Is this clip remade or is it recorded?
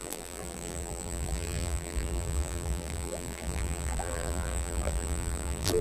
remade